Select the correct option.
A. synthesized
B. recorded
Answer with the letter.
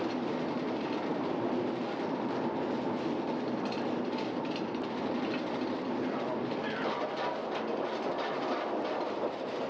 A